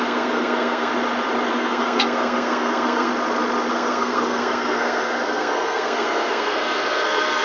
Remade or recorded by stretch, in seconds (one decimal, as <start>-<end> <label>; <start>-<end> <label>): 0.0-0.9 remade; 0.9-1.5 recorded; 1.5-3.1 remade; 3.1-3.7 recorded; 3.7-7.4 remade